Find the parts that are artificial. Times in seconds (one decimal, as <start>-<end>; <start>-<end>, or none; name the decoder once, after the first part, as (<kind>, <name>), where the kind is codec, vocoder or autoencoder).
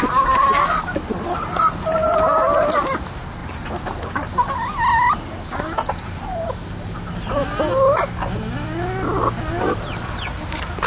none